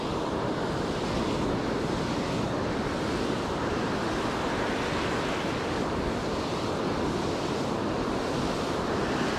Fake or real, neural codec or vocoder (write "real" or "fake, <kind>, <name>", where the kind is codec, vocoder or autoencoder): real